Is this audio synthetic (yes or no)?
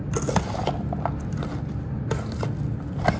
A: no